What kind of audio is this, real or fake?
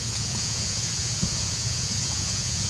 fake